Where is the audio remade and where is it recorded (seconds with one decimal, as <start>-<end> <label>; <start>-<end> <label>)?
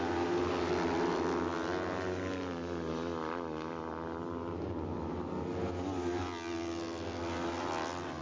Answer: 0.0-8.2 recorded